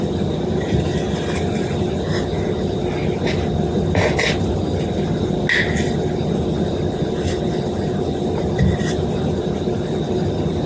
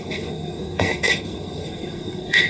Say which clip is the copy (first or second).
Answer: second